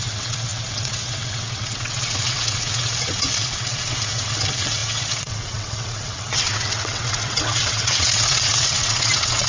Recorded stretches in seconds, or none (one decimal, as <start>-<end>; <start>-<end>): none